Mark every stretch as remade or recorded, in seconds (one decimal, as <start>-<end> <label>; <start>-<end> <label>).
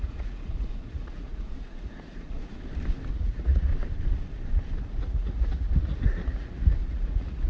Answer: 0.0-2.4 remade; 2.4-3.1 recorded; 3.1-3.7 remade; 3.7-5.0 recorded; 5.0-7.5 remade